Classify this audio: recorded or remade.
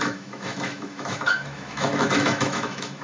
remade